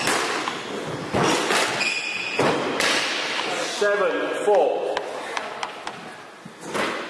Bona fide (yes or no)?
yes